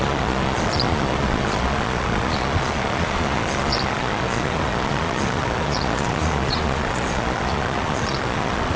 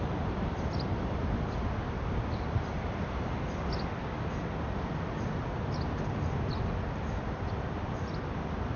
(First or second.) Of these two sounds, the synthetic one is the first